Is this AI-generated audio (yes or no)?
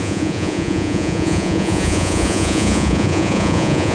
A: yes